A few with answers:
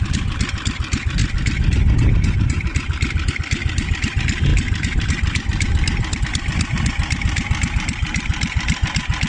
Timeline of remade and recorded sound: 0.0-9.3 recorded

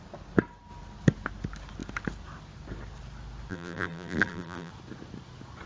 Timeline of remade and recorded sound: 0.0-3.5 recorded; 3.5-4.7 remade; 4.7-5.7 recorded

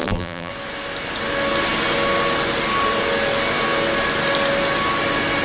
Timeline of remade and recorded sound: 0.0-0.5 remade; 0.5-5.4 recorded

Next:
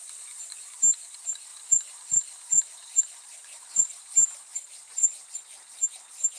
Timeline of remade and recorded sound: 0.0-1.5 recorded; 1.5-5.3 remade; 5.3-6.4 recorded